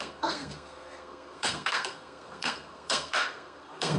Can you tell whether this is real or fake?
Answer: fake